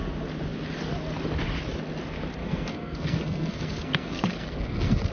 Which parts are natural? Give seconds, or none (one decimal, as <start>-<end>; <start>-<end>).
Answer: 0.0-2.4